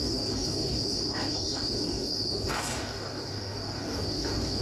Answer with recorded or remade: remade